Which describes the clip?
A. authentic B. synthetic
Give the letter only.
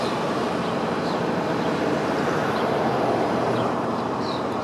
B